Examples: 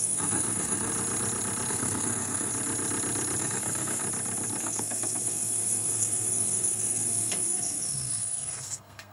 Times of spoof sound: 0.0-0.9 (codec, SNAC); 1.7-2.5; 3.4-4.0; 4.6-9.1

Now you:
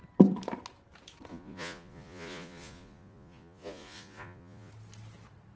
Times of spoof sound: 1.3-4.7 (vocoder, Vocos)

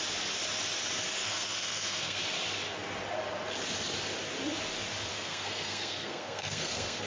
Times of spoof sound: 1.2-2.2 (codec, SNAC); 5.1-7.1

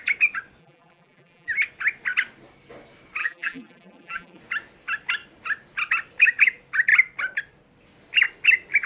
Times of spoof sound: 0.6-1.5 (vocoder, BigVGAN v2); 3.2-4.4